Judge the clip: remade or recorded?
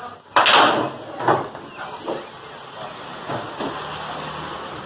recorded